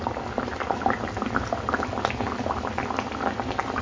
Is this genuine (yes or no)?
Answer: yes